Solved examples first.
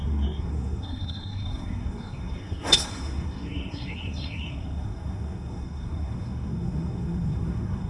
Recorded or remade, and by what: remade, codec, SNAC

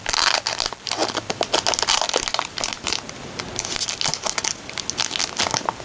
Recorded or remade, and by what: recorded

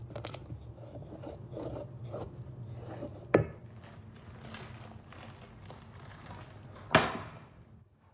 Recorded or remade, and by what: recorded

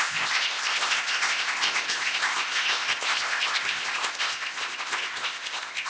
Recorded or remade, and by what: remade, codec, ZipCodec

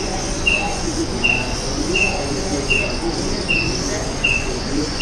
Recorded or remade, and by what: remade, vocoder, Vocos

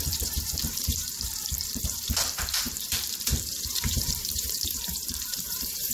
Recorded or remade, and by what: remade, vocoder, BigVGAN v2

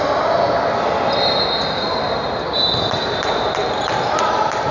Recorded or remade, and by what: recorded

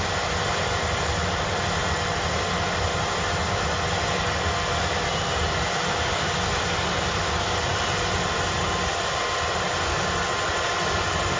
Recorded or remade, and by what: recorded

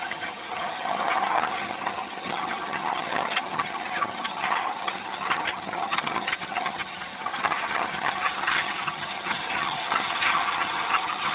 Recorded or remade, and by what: remade, vocoder, HiFi-GAN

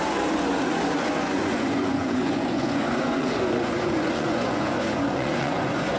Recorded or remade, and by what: remade, vocoder, Vocos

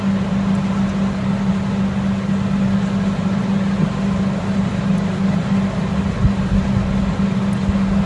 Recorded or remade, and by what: recorded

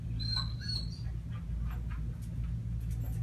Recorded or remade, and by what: recorded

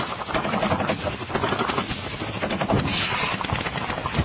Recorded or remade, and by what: recorded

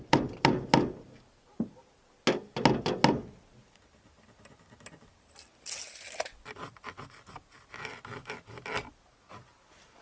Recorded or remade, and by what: recorded